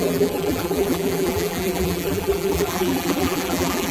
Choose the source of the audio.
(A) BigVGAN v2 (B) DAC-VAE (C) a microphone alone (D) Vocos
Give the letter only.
A